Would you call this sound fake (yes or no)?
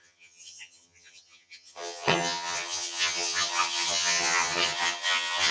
yes